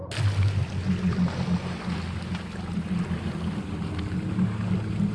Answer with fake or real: real